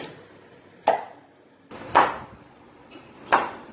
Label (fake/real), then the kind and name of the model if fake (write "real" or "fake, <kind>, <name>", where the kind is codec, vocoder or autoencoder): real